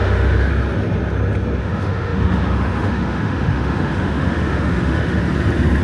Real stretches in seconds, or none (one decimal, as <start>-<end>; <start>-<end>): 0.5-1.6; 5.2-5.8